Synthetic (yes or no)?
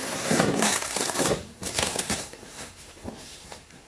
yes